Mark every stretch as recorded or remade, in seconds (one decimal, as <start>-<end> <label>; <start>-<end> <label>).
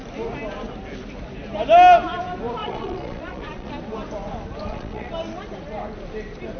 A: 0.0-2.6 recorded; 2.6-3.7 remade; 3.7-4.6 recorded; 4.6-5.1 remade; 5.1-6.6 recorded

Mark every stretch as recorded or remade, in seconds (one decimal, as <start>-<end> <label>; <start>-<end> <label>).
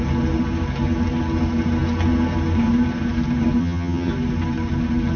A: 0.0-3.6 recorded; 3.6-4.1 remade; 4.1-5.2 recorded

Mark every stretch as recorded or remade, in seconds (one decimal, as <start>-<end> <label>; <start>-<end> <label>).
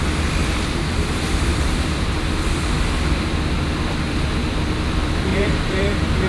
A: 0.0-0.4 recorded; 0.4-2.1 remade; 2.1-5.3 recorded; 5.3-5.8 remade; 5.8-6.3 recorded